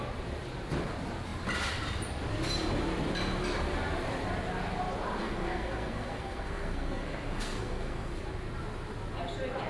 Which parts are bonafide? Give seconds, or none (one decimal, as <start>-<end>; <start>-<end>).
0.0-5.2; 8.1-9.7